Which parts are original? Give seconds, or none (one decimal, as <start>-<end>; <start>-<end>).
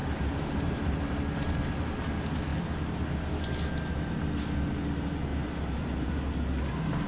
1.2-5.3; 6.1-7.1